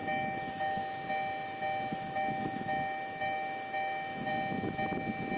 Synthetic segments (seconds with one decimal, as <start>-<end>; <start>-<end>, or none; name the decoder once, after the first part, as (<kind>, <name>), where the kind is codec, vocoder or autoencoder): 0.0-0.8 (autoencoder, DAC-VAE); 1.9-4.3